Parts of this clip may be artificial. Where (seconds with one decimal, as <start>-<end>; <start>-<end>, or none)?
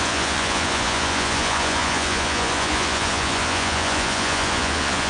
0.0-5.1